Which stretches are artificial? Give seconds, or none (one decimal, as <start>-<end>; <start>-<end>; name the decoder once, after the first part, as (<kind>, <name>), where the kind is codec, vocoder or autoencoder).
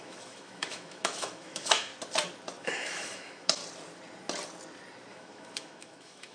0.0-1.9 (autoencoder, DAC-VAE); 2.6-3.6; 5.1-6.3